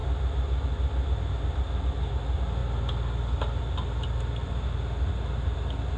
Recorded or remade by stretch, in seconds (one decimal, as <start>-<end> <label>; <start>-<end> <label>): 0.0-6.0 recorded